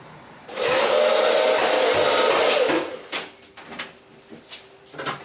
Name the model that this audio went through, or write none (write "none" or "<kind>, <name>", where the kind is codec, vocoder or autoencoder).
none